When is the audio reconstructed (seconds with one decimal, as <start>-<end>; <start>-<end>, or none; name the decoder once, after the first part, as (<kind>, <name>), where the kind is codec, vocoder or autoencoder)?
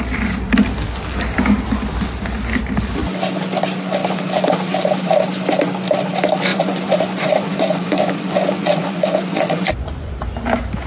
6.5-10.1 (vocoder, Vocos)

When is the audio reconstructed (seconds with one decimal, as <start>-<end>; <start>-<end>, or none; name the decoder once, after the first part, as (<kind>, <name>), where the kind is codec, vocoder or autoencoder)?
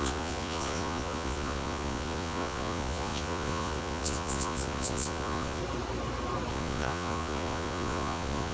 0.0-5.6 (vocoder, Vocos); 6.5-8.5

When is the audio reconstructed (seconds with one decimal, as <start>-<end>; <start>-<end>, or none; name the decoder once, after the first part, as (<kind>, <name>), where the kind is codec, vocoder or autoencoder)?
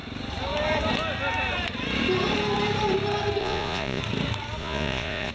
3.4-4.0 (vocoder, Vocos); 4.6-5.3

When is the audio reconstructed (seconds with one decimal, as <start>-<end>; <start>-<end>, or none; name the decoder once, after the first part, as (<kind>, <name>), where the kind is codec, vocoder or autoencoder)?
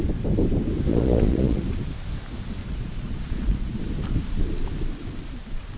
0.9-1.6 (vocoder, Vocos); 2.6-3.8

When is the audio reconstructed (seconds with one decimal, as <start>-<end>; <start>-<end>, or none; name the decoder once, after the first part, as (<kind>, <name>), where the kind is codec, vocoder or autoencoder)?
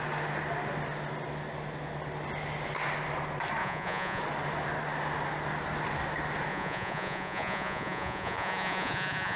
3.6-4.2 (vocoder, Vocos); 6.5-9.4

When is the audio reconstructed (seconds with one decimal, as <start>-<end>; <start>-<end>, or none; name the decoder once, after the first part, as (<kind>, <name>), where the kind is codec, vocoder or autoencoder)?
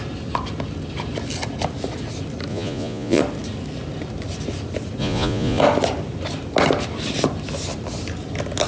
2.5-3.2 (vocoder, Vocos); 5.0-5.6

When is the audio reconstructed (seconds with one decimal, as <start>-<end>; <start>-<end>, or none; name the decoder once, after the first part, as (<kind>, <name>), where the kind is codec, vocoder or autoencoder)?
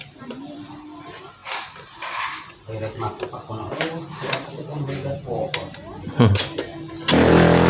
4.7-5.4 (vocoder, Vocos)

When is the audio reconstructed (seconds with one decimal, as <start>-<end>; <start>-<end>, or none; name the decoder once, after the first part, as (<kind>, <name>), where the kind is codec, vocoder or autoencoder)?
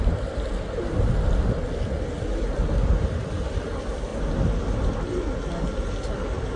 none